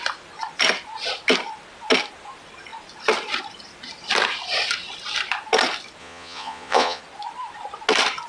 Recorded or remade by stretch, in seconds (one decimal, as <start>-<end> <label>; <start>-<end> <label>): 0.0-6.0 recorded; 6.0-7.0 remade; 7.0-8.3 recorded

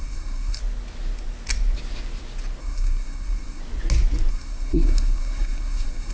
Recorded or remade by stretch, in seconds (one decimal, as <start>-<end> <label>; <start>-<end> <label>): 0.0-0.6 remade; 0.6-2.6 recorded; 2.6-3.6 remade; 3.6-4.3 recorded; 4.3-6.1 remade

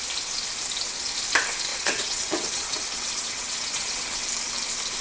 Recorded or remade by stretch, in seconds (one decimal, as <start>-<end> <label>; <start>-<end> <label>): 0.0-1.7 recorded; 1.7-4.2 remade; 4.2-5.0 recorded

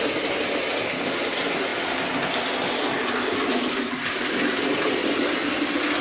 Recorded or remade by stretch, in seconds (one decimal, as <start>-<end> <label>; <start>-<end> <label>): 0.0-3.5 recorded; 3.5-5.0 remade; 5.0-6.0 recorded

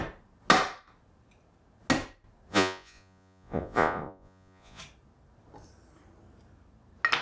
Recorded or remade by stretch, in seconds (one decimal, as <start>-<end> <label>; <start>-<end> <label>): 0.0-2.5 recorded; 2.5-4.8 remade; 4.8-7.2 recorded

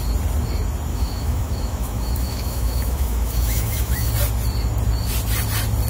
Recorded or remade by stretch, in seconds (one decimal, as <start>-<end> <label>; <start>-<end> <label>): 0.0-0.9 recorded; 0.9-4.1 remade; 4.1-5.9 recorded